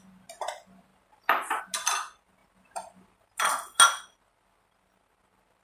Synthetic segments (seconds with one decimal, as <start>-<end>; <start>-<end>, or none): 0.9-1.6; 2.4-3.5